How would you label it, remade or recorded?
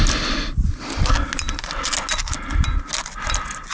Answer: recorded